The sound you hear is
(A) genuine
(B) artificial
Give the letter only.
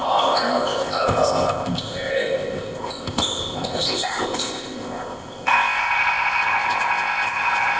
B